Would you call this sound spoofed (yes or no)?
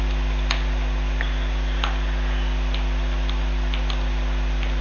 no